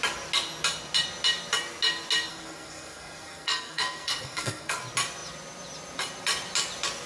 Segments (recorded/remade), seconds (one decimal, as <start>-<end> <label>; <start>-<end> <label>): 0.0-2.3 recorded; 2.3-4.8 remade; 4.8-7.1 recorded